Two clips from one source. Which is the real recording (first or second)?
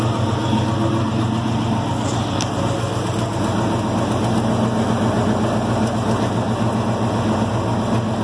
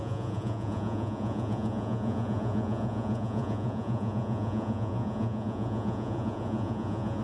first